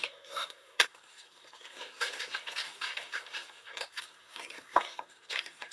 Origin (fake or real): fake